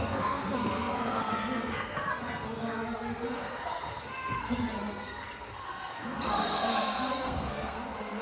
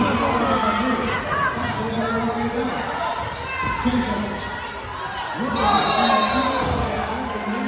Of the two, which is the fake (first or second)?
first